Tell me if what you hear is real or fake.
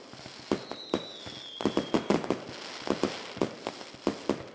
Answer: real